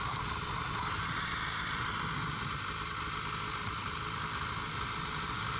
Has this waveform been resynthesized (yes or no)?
no